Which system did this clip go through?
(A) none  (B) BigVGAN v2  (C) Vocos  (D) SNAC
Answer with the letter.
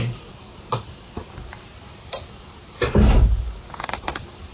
B